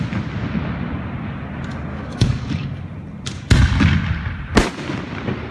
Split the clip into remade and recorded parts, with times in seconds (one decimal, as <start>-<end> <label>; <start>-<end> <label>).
0.0-1.9 recorded; 1.9-2.8 remade; 2.8-5.5 recorded